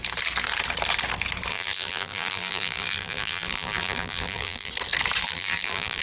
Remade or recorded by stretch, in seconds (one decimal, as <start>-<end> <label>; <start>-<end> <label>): 0.0-1.5 recorded; 1.5-4.7 remade; 4.7-5.2 recorded; 5.2-6.0 remade